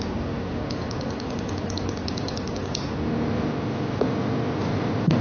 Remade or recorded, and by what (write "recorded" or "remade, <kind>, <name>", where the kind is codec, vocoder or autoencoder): recorded